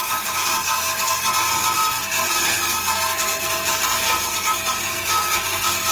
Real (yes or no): no